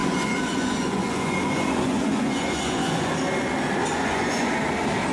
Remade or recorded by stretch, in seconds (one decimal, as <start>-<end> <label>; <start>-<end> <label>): 0.0-3.1 remade; 3.1-3.9 recorded; 3.9-4.5 remade; 4.5-5.1 recorded